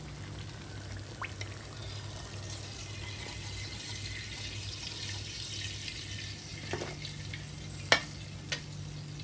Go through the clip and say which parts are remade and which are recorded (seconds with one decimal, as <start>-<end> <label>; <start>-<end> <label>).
0.0-9.2 recorded